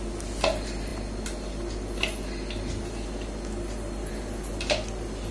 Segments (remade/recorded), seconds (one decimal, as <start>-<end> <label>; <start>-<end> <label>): 0.0-5.3 recorded